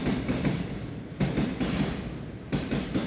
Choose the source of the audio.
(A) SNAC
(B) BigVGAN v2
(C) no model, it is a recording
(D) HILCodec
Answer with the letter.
C